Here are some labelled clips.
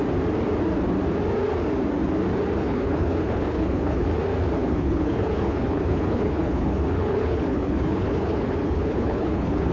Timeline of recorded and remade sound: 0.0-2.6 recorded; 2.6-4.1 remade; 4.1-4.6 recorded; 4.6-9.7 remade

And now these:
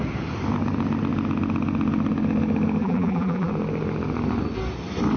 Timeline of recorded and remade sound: 0.0-2.8 recorded; 2.8-3.5 remade; 3.5-5.2 recorded

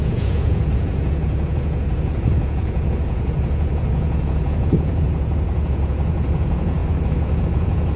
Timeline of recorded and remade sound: 0.0-8.0 remade

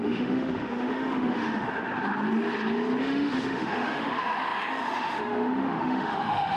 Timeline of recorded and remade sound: 0.0-1.9 remade; 1.9-3.0 recorded; 3.0-6.6 remade

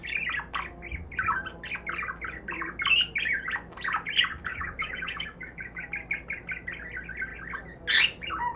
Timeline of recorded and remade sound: 0.0-4.5 recorded; 4.5-5.9 remade; 5.9-8.6 recorded

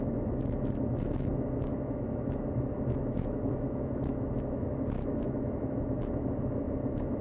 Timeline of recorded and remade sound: 0.0-7.2 remade